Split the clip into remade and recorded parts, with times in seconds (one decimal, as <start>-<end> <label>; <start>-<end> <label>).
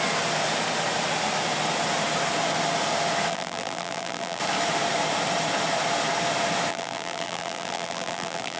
0.0-3.3 recorded; 3.3-4.4 remade; 4.4-6.7 recorded; 6.7-8.6 remade